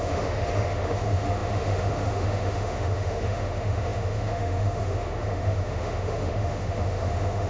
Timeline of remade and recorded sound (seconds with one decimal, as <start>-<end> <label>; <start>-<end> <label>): 0.0-7.5 remade